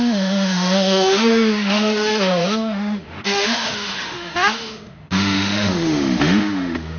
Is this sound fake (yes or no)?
yes